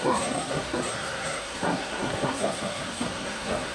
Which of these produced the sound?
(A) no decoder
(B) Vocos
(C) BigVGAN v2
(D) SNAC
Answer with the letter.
D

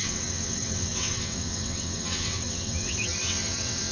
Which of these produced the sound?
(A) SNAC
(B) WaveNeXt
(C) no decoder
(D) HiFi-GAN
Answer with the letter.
B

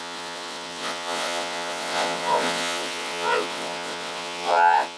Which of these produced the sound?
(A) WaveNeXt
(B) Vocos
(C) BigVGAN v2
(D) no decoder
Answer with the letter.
A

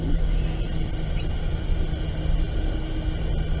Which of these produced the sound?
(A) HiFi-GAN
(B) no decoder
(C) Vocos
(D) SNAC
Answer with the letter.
B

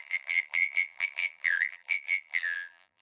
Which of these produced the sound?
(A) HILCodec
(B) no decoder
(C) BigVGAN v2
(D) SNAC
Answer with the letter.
C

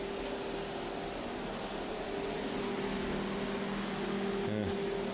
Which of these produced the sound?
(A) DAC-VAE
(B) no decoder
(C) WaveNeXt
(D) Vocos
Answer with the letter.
B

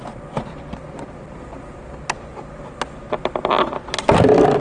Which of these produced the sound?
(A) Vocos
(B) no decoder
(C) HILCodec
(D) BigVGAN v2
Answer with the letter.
B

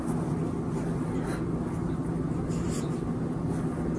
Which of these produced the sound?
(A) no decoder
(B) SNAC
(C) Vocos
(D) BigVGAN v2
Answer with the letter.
A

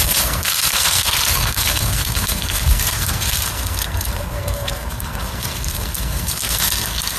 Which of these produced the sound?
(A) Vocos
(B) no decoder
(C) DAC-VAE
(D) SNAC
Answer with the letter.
D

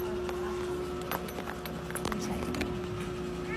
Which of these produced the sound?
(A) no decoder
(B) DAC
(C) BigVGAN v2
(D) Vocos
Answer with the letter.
A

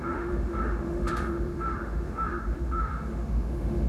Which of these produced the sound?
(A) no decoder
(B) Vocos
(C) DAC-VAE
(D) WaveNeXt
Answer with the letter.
C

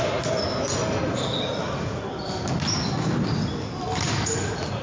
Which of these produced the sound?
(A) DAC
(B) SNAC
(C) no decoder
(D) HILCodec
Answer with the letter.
C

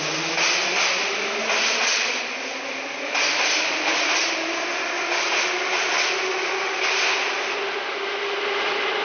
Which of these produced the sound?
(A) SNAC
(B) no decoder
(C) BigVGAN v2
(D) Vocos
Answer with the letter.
B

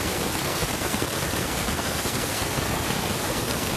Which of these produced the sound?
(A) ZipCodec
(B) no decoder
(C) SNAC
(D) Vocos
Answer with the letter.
C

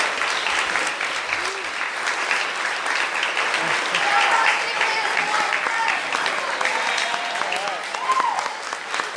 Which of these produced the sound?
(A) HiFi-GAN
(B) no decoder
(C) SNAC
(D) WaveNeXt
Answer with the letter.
B